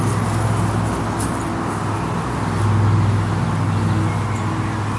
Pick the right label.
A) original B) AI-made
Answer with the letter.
A